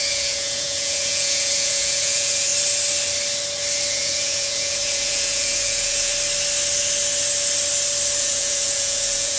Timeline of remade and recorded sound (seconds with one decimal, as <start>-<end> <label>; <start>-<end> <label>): 0.0-2.5 remade; 2.5-3.9 recorded; 3.9-6.1 remade; 6.1-8.2 recorded; 8.2-9.4 remade